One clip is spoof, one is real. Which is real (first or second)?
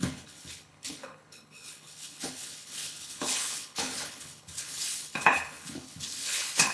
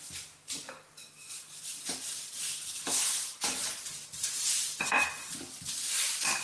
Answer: second